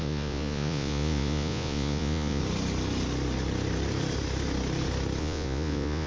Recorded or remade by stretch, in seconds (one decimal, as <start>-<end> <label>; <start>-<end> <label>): 0.0-2.4 remade; 2.4-5.2 recorded; 5.2-6.1 remade